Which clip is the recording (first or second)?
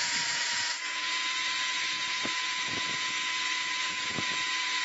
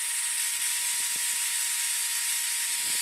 second